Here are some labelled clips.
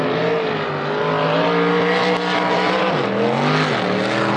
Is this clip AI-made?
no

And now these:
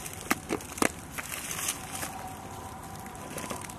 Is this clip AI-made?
no